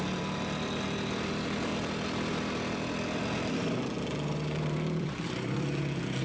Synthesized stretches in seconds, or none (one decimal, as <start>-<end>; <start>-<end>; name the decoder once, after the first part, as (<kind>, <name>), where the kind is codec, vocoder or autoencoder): 0.0-1.7 (vocoder, BigVGAN v2); 3.5-6.2